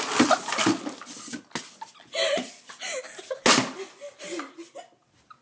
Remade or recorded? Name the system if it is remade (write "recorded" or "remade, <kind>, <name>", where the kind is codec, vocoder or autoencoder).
recorded